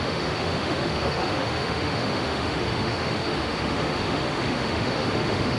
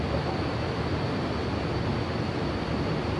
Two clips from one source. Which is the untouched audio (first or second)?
second